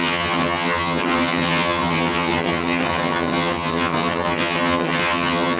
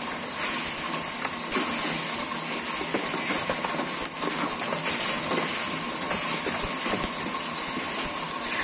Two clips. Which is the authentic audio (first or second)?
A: second